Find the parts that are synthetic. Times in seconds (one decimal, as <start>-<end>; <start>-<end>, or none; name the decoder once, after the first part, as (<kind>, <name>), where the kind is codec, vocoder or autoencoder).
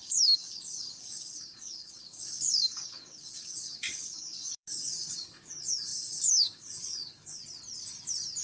0.0-7.4 (codec, DAC)